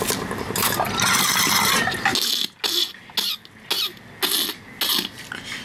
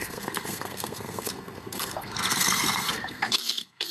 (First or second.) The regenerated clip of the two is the second